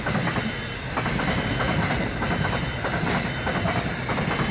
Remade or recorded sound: recorded